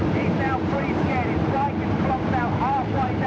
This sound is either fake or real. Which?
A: fake